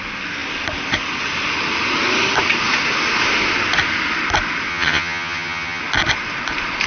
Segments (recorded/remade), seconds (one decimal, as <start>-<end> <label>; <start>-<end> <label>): 0.0-4.7 recorded; 4.7-5.8 remade; 5.8-6.9 recorded